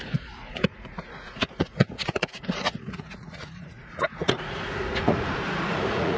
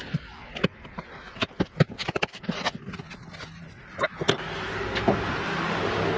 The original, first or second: second